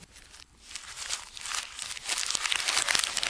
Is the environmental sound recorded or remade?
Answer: recorded